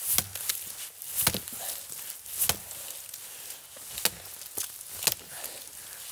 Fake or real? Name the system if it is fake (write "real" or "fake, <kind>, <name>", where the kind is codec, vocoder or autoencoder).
real